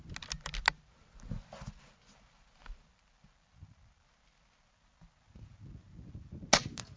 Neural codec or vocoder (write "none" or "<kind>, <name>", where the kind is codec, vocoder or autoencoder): none